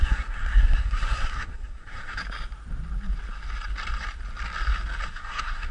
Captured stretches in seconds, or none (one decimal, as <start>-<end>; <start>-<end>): 2.2-5.1